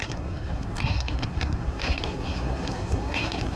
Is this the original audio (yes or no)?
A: no